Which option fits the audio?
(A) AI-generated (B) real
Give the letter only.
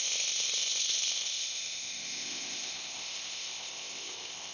A